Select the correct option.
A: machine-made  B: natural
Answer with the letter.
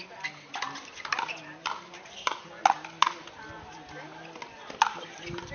B